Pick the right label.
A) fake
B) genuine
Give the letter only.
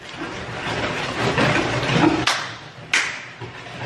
B